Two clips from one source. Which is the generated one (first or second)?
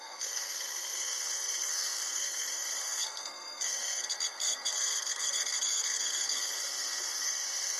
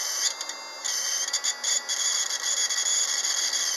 first